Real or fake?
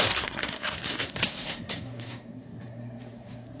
fake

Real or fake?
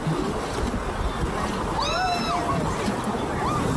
real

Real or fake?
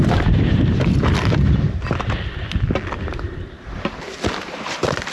fake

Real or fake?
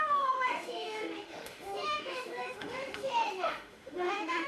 fake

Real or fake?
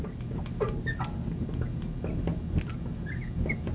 real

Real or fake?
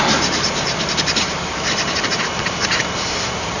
fake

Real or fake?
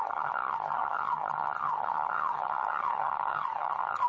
fake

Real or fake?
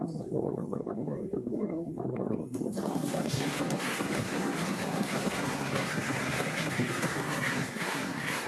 fake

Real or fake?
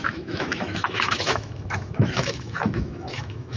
fake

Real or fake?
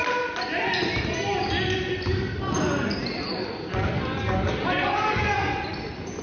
real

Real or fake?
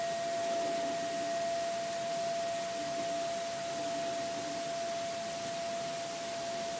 real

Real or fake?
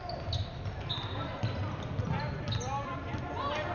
real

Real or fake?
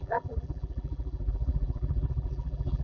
fake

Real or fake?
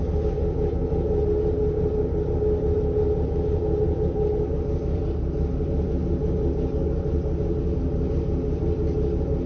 real